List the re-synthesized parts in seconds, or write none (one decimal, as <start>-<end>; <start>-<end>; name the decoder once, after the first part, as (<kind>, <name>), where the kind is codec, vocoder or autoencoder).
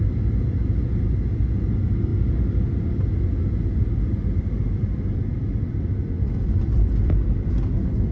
none